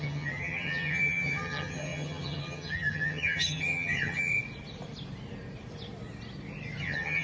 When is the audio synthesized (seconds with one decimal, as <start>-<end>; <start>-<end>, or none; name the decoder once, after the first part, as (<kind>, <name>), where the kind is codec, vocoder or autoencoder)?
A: 0.0-4.3 (vocoder, HiFi-GAN); 6.8-7.2